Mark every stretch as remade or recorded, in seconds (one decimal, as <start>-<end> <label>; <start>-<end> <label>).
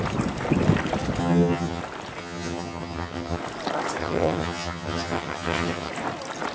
0.0-1.2 recorded; 1.2-1.8 remade; 1.8-2.2 recorded; 2.2-3.4 remade; 3.4-4.0 recorded; 4.0-5.9 remade; 5.9-6.5 recorded